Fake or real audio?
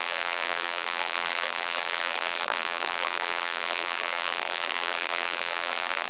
fake